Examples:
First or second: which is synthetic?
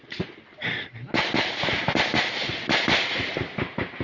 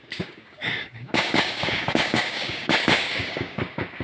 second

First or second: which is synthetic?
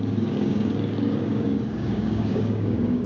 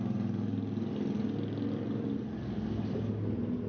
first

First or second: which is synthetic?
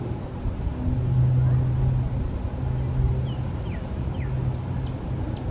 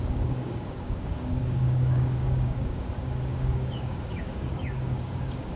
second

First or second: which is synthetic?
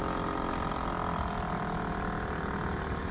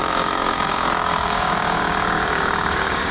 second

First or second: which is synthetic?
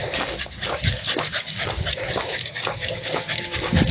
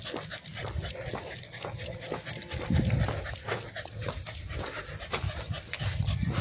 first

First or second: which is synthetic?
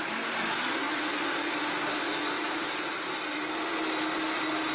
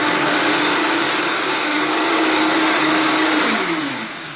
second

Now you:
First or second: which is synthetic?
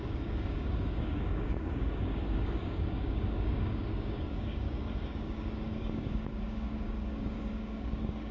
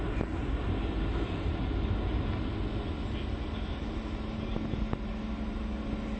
first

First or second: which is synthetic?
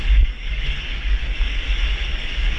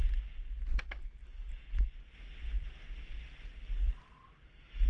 first